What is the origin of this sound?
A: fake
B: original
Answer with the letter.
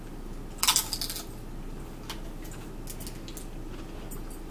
B